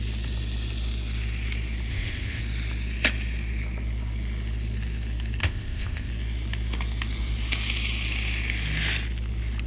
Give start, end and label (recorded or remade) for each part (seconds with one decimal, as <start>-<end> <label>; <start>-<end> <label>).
0.0-1.9 recorded; 1.9-2.4 remade; 2.4-5.4 recorded; 5.4-6.1 remade; 6.1-9.7 recorded